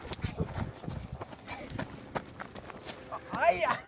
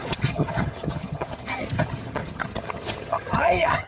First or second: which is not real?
second